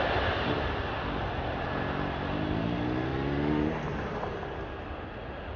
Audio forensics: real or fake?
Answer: real